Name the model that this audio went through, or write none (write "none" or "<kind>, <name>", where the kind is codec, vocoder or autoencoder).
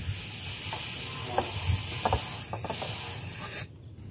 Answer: none